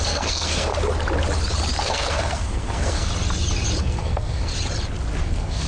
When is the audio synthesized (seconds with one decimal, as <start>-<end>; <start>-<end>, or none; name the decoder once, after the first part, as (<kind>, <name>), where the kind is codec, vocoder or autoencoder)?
0.0-0.7 (codec, SNAC); 1.8-3.1; 3.8-4.5; 5.2-5.7